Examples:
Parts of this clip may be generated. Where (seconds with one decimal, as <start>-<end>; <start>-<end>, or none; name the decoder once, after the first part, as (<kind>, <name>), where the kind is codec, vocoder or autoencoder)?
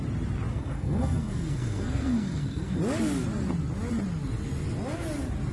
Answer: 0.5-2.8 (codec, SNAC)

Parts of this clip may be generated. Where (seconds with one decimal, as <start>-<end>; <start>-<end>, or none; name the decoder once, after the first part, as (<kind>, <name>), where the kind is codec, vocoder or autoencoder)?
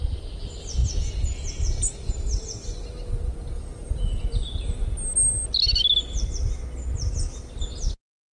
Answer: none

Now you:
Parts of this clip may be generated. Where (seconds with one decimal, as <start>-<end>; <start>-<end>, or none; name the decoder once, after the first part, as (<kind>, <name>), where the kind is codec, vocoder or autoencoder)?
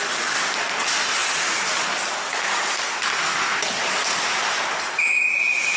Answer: none